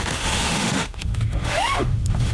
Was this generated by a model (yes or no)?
yes